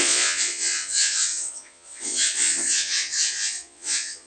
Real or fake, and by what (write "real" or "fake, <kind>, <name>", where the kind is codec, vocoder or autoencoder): fake, vocoder, Vocos